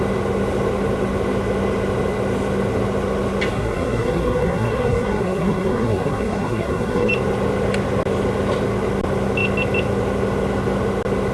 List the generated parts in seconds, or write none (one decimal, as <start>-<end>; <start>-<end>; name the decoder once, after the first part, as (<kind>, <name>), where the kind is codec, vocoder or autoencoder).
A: 3.5-7.1 (codec, SNAC)